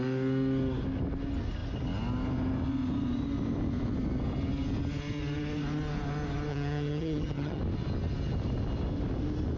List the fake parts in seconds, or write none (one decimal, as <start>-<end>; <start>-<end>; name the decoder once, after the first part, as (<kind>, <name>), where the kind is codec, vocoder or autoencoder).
6.5-7.6 (vocoder, HiFi-GAN)